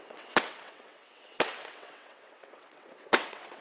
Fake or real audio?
fake